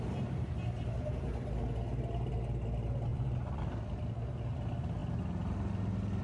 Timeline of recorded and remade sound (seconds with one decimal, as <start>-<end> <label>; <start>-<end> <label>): 0.0-3.1 recorded; 3.1-3.6 remade; 3.6-6.2 recorded